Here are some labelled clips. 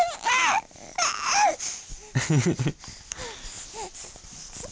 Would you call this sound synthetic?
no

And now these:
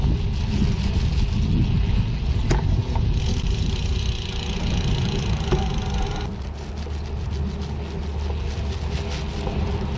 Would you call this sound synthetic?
no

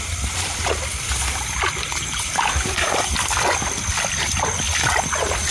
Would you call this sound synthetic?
no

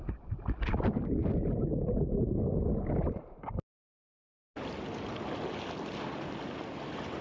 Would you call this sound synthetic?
no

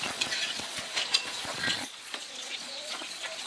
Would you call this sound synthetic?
yes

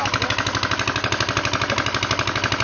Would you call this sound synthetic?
no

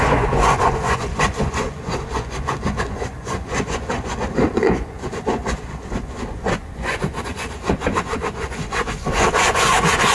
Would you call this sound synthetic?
yes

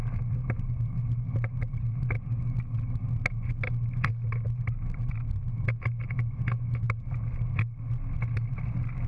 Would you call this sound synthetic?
no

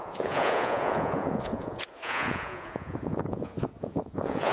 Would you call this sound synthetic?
yes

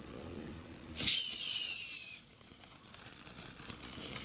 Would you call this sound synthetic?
yes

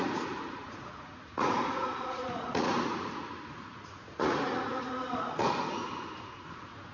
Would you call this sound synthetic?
yes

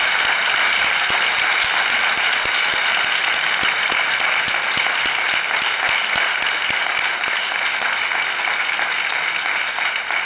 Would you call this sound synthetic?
no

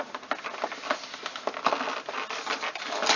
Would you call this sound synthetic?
no